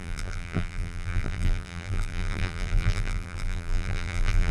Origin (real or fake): fake